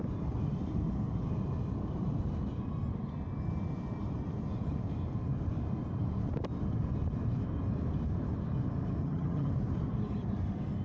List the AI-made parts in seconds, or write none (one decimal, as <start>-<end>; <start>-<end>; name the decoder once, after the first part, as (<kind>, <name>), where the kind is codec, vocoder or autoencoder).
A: 9.0-9.5 (vocoder, HiFi-GAN)